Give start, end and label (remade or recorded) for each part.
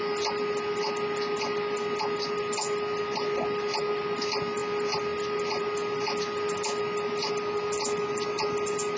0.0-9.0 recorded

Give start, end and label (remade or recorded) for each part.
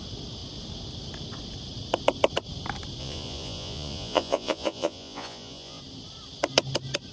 0.0-3.0 recorded; 3.0-5.8 remade; 5.8-7.1 recorded